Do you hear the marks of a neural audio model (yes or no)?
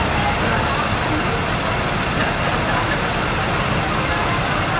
no